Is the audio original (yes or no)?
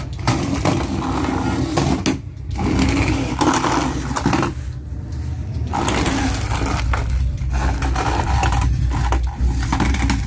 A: yes